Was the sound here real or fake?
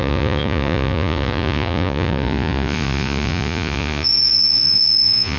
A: fake